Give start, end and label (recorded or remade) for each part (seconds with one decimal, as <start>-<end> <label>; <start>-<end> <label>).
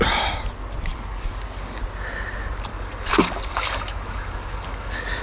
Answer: 0.0-0.9 recorded; 0.9-1.8 remade; 1.8-2.7 recorded; 2.7-5.2 remade